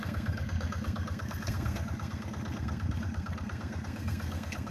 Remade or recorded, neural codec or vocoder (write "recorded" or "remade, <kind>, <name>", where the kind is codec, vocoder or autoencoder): remade, codec, SNAC